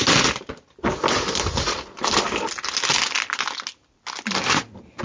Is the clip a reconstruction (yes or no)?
no